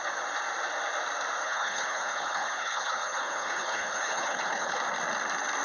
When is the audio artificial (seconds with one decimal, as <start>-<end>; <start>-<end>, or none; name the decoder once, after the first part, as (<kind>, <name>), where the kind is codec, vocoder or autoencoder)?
1.4-4.8 (codec, HILCodec)